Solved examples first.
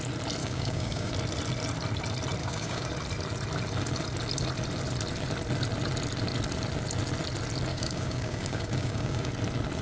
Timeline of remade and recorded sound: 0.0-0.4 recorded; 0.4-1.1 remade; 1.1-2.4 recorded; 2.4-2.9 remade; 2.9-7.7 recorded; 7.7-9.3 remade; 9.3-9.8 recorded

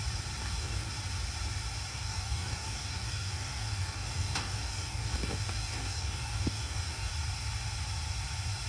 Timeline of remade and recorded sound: 0.0-0.4 recorded; 0.4-0.9 remade; 0.9-1.9 recorded; 1.9-7.1 remade; 7.1-8.7 recorded

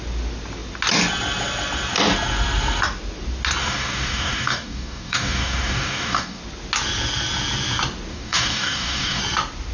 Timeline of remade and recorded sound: 0.0-3.6 recorded; 3.6-6.4 remade; 6.4-8.1 recorded; 8.1-9.2 remade; 9.2-9.7 recorded

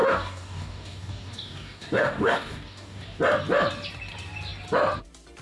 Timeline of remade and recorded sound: 0.0-3.2 remade; 3.2-5.4 recorded